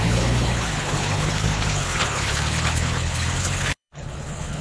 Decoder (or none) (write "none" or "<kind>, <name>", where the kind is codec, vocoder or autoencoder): codec, HILCodec